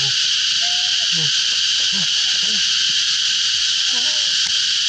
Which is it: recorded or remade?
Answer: recorded